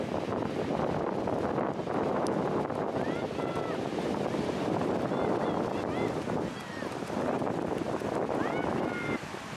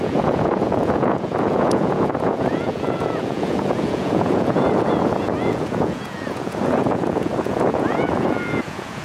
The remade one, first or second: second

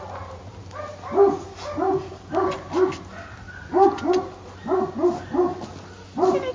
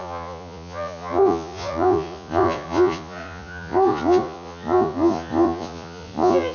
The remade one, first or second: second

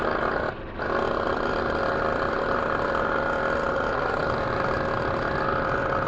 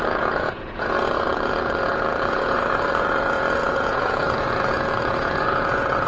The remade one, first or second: second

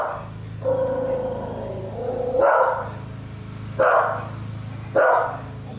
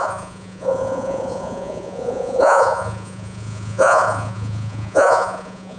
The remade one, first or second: second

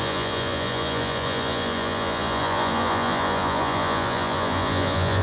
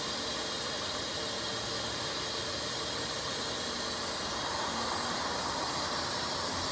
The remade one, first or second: first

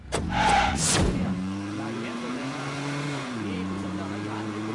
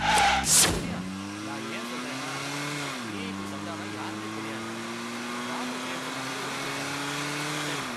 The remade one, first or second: first